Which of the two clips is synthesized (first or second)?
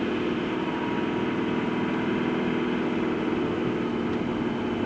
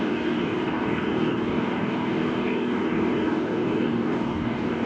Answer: second